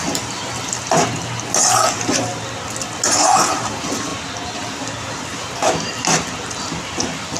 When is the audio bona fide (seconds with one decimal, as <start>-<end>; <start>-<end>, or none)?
0.0-7.4